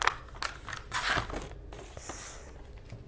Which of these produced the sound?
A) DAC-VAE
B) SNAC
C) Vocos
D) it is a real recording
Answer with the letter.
D